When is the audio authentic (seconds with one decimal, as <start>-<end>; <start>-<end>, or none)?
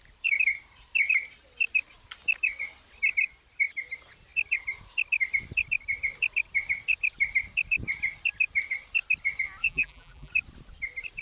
0.0-9.6; 10.3-11.2